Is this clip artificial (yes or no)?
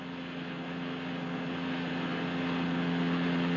no